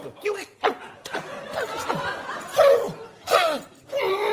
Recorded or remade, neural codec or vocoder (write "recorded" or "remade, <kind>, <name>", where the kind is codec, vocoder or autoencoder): remade, vocoder, BigVGAN v2